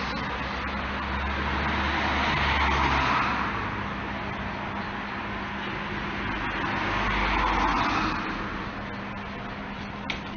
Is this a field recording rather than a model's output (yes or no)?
yes